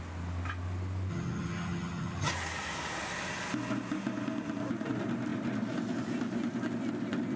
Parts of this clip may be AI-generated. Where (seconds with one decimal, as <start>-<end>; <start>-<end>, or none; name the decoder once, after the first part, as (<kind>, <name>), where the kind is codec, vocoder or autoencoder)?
1.1-2.3 (vocoder, HiFi-GAN)